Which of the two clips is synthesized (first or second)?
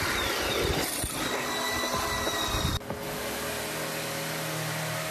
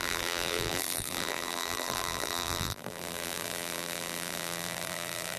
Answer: second